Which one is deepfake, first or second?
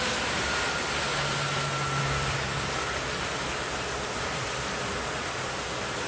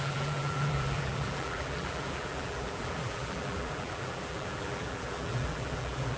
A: second